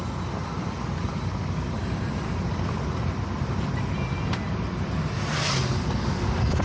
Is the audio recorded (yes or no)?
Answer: yes